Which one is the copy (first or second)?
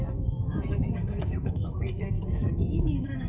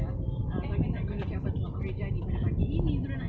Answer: first